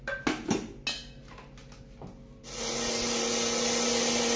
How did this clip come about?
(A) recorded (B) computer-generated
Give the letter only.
A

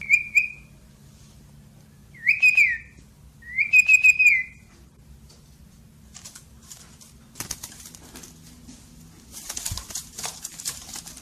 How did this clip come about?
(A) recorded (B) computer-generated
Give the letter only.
A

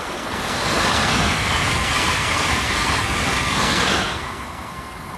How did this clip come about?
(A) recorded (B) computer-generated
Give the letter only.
B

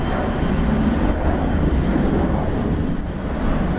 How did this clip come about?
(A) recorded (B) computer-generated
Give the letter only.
A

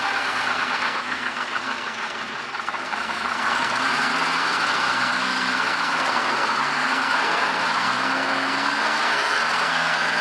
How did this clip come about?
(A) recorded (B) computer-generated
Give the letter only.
B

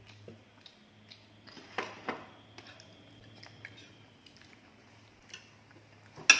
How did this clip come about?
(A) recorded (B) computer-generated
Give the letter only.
A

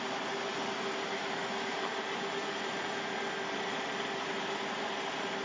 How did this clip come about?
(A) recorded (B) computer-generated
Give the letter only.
A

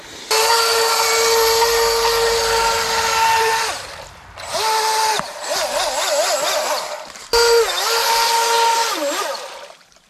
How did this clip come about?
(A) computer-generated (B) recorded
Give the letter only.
B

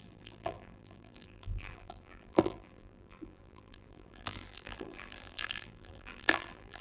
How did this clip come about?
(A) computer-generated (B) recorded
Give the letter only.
A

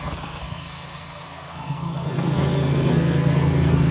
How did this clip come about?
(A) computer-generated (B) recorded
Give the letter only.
A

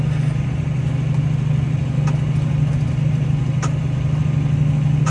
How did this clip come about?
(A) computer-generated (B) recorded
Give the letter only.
B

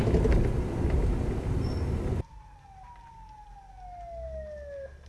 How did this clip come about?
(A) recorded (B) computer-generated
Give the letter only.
A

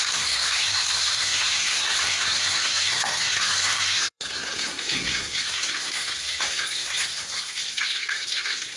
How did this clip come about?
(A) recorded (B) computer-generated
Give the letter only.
B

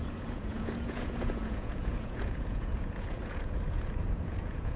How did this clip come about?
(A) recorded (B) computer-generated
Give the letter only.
B